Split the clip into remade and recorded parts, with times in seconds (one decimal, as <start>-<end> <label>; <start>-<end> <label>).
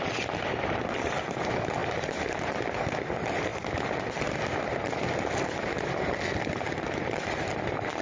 0.0-8.0 recorded